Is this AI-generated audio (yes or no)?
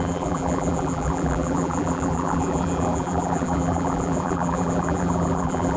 yes